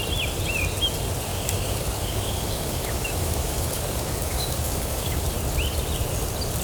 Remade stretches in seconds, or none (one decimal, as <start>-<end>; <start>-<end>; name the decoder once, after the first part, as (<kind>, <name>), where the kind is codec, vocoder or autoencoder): 1.3-5.3 (codec, DAC)